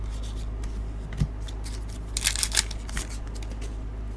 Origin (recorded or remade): recorded